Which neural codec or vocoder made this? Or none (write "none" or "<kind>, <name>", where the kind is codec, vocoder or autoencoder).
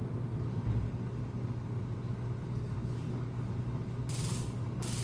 none